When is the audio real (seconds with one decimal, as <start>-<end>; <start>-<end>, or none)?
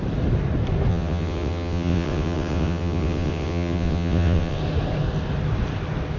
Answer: 0.0-0.9; 4.6-6.2